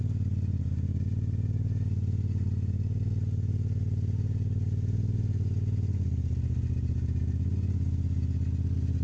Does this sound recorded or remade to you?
recorded